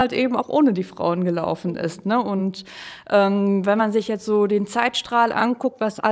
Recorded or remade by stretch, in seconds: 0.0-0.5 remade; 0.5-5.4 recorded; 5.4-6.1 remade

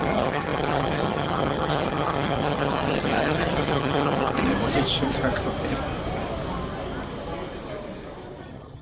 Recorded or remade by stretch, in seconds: 0.0-4.5 remade; 4.5-8.4 recorded; 8.4-8.8 remade